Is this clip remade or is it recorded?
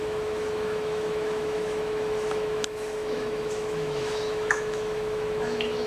remade